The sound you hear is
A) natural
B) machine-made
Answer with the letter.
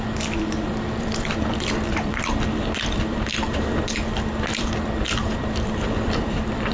B